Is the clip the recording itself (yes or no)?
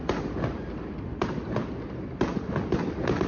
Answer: yes